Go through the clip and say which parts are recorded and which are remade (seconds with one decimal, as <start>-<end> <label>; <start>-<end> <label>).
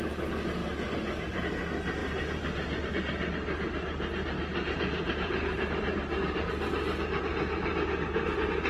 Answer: 0.0-0.6 recorded; 0.6-1.4 remade; 1.4-2.0 recorded; 2.0-2.9 remade; 2.9-4.5 recorded; 4.5-6.5 remade; 6.5-8.7 recorded